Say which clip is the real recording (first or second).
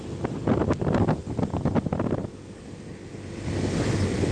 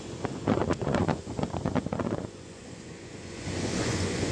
first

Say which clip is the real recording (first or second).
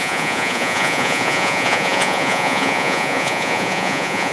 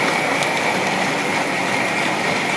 second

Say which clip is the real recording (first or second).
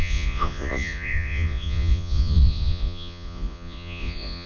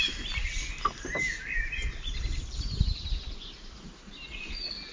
second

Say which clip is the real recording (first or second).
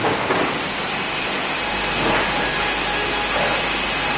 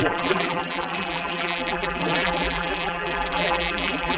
first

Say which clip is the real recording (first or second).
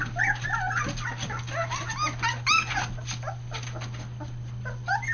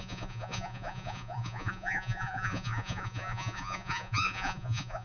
first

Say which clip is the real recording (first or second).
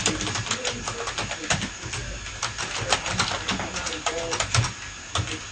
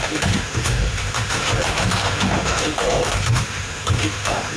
first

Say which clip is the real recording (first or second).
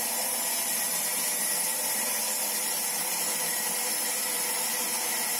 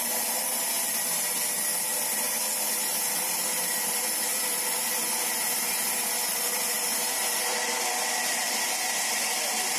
second